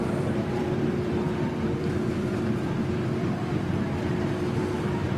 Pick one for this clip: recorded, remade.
remade